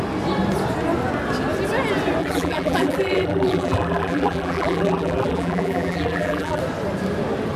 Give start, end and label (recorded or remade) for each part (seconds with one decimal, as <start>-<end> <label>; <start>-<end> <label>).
0.0-2.2 recorded; 2.2-6.6 remade; 6.6-7.6 recorded